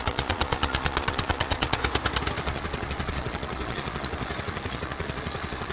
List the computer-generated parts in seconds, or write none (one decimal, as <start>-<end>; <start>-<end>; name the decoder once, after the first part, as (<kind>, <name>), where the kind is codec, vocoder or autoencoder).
0.0-1.8 (vocoder, Vocos); 2.4-5.7